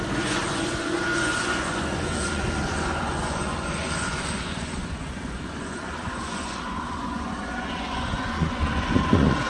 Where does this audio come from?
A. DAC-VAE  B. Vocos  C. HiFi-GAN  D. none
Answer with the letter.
B